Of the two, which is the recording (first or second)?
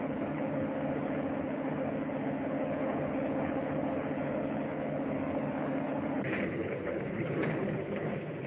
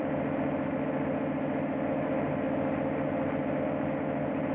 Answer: second